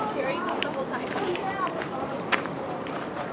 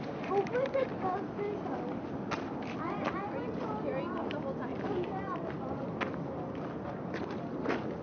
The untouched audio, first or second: second